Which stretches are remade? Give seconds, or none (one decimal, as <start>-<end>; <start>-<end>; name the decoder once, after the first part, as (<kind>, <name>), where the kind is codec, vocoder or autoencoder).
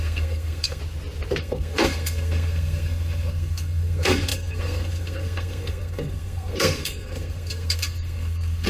0.0-0.8 (codec, SNAC); 1.4-8.7